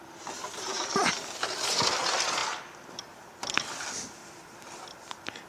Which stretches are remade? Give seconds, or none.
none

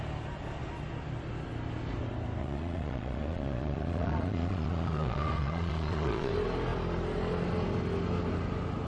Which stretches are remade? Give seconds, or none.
2.4-6.3 (vocoder, Vocos)

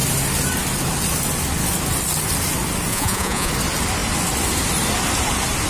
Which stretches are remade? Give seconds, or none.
2.9-3.5 (vocoder, Vocos)

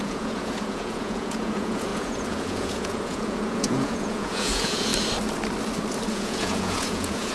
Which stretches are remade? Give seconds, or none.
0.0-4.9 (vocoder, Vocos); 6.1-7.3

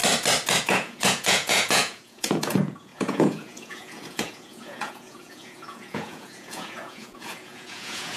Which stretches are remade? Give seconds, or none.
0.6-8.2 (vocoder, Vocos)

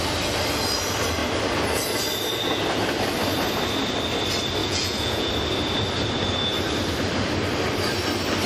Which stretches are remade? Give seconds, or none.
4.6-5.3 (vocoder, Vocos)

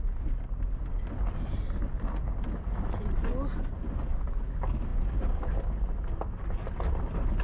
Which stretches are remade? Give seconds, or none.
none

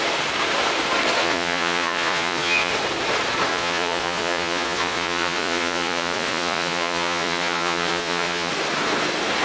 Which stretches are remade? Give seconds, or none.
1.2-2.7 (vocoder, Vocos); 3.5-8.5